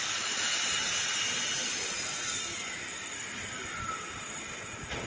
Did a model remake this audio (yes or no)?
no